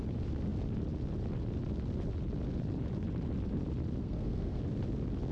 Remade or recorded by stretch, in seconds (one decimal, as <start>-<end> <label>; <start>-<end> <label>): 0.0-4.0 recorded; 4.0-4.6 remade; 4.6-5.3 recorded